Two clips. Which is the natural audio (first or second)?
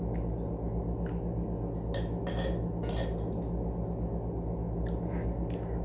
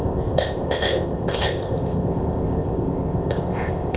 first